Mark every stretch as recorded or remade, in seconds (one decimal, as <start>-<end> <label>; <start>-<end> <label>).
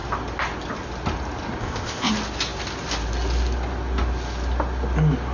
0.0-1.6 recorded; 1.6-2.1 remade; 2.1-5.3 recorded